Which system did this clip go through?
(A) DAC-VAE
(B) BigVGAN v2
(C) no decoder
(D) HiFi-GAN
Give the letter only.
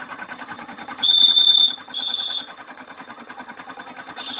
D